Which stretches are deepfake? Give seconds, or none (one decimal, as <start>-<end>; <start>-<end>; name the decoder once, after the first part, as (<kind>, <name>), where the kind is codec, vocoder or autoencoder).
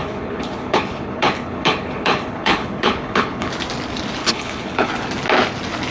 0.0-3.5 (codec, HILCodec); 4.2-4.9